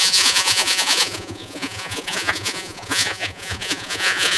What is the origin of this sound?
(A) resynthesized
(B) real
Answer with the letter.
A